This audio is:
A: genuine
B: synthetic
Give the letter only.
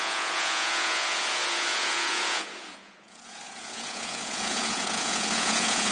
B